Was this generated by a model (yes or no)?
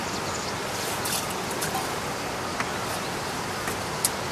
no